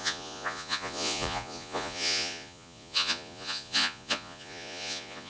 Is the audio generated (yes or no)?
yes